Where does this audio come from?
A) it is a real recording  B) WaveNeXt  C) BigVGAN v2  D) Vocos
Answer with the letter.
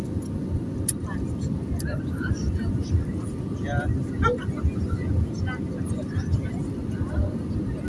A